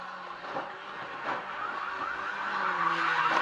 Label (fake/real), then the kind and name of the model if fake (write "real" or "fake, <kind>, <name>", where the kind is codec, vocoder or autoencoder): real